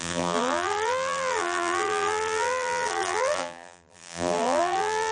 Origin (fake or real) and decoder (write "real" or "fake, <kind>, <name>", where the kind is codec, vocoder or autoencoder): fake, vocoder, BigVGAN v2